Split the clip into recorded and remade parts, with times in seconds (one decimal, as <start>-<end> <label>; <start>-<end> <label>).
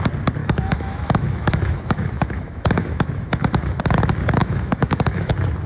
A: 0.0-0.4 recorded; 0.4-3.8 remade; 3.8-4.4 recorded; 4.4-5.3 remade; 5.3-5.7 recorded